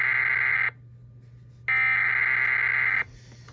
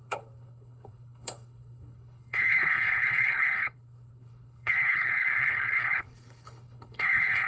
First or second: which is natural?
first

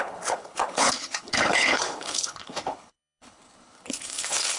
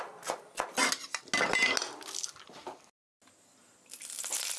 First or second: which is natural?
second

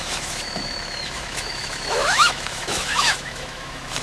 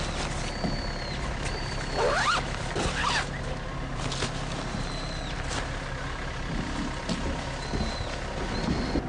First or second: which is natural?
second